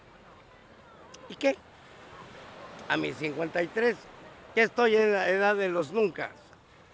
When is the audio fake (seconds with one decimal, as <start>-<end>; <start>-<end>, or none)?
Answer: 5.0-5.8